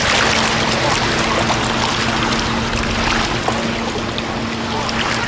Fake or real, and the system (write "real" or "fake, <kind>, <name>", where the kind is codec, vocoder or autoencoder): real